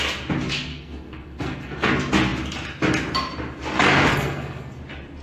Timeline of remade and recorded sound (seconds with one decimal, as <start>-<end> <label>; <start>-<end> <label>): 0.0-0.7 recorded; 0.7-1.9 remade; 1.9-4.1 recorded; 4.1-4.8 remade; 4.8-5.2 recorded